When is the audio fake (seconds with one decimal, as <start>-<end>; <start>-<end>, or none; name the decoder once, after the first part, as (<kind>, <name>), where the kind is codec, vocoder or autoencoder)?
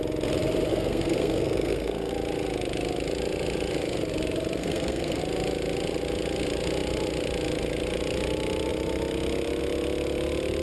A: 0.7-2.1 (codec, SNAC); 4.6-5.2